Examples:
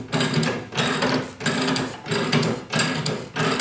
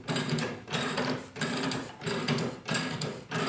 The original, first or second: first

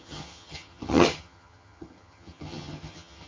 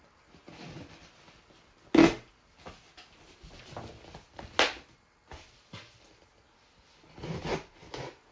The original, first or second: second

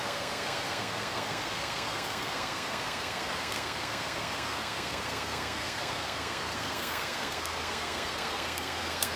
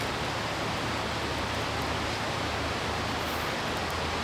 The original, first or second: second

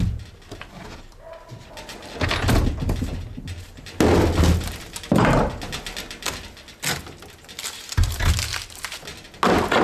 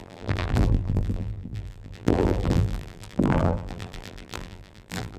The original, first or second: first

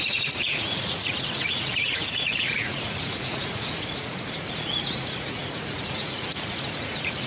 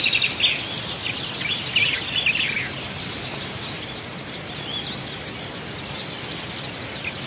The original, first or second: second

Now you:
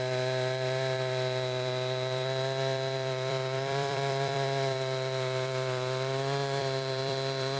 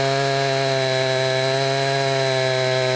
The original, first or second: second